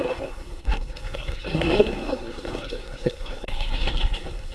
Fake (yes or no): yes